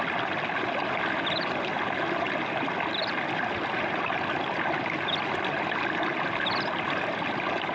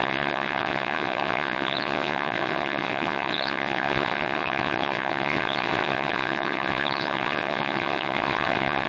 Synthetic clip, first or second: second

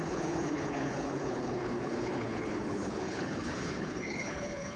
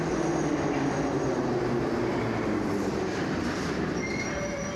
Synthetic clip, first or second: first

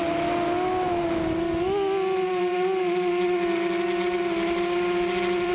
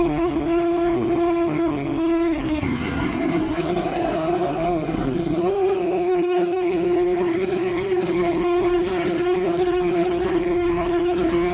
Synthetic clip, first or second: second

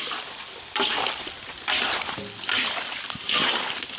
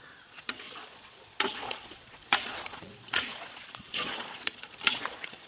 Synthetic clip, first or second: second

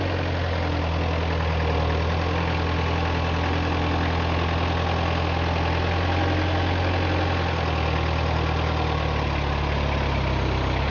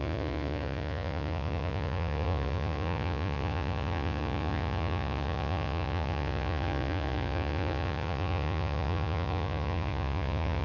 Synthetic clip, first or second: second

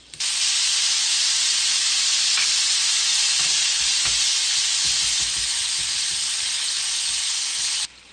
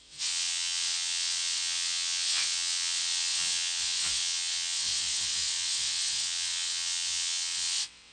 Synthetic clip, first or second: second